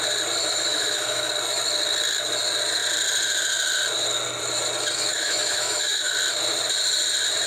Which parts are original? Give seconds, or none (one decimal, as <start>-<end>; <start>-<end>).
0.0-0.4; 1.3-5.1; 6.1-7.5